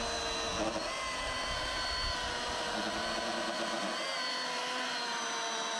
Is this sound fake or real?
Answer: real